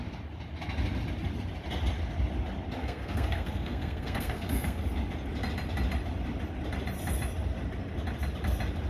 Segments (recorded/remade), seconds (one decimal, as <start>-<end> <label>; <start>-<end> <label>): 0.0-2.8 recorded; 2.8-4.8 remade; 4.8-8.9 recorded